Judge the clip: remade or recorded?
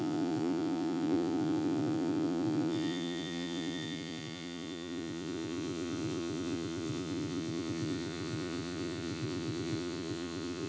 remade